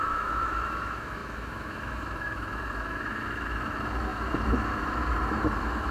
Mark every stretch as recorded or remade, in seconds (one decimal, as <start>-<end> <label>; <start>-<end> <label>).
0.0-5.9 remade

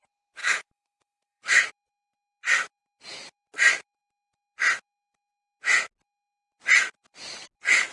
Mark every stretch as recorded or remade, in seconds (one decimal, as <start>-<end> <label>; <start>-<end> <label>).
0.0-0.4 recorded; 0.4-1.7 remade; 1.7-7.9 recorded